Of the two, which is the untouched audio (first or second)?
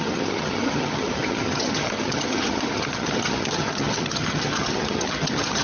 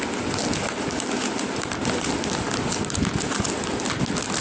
second